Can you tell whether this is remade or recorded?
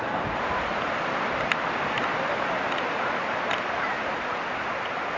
recorded